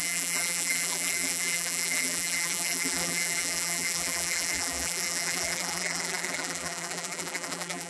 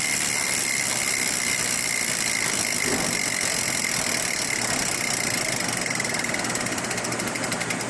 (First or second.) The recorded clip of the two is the second